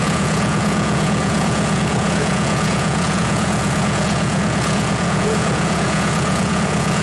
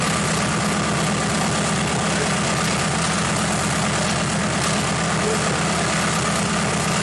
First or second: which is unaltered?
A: second